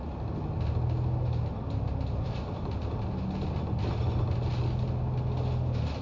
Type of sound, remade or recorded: recorded